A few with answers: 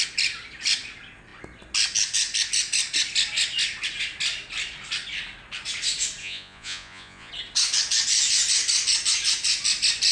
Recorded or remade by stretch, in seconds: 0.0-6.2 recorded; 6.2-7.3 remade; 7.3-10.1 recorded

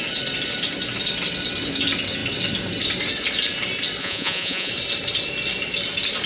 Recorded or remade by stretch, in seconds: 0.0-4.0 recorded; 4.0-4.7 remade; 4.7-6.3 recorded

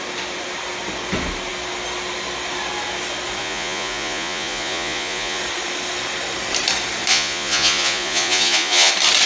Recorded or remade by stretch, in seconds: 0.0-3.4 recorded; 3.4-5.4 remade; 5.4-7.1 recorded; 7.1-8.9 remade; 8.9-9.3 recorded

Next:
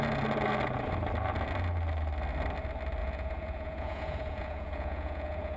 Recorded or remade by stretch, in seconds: 0.0-3.0 recorded; 3.0-5.6 remade

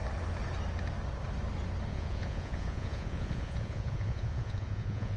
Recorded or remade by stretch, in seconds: 0.0-1.9 recorded; 1.9-5.2 remade

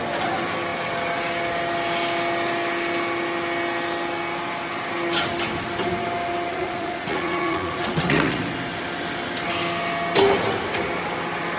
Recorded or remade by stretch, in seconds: 0.0-6.5 recorded; 6.5-8.4 remade; 8.4-11.6 recorded